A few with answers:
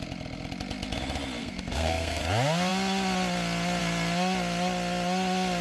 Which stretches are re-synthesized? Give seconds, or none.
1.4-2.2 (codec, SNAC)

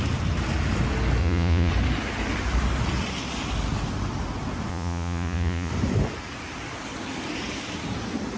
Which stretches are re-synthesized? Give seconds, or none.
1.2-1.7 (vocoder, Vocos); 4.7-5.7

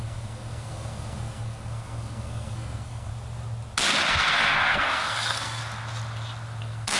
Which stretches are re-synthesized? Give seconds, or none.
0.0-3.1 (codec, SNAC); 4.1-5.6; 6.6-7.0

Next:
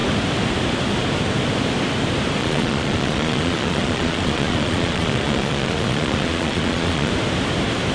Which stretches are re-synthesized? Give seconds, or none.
2.4-7.1 (vocoder, Vocos)

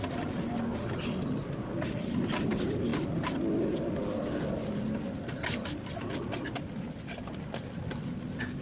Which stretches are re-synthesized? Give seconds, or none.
none

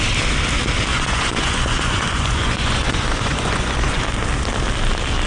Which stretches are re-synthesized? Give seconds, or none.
0.9-4.0 (vocoder, Vocos)

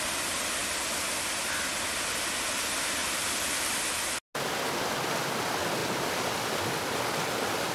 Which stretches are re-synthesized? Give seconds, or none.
none